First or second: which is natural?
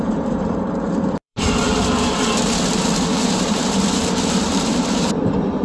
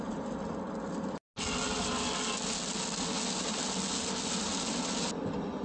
second